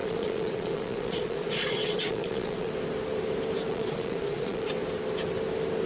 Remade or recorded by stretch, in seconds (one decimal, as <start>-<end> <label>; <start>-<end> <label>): 0.0-2.7 remade; 2.7-3.7 recorded; 3.7-4.7 remade; 4.7-5.9 recorded